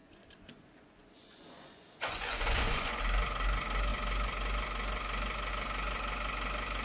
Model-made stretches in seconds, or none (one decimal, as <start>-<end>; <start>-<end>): 0.0-3.0